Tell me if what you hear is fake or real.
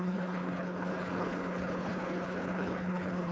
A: fake